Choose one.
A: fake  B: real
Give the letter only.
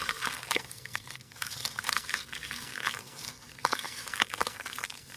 A